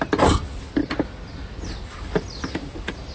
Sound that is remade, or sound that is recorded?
recorded